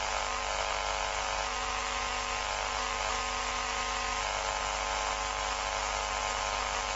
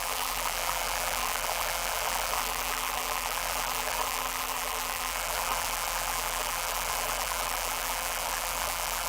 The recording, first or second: first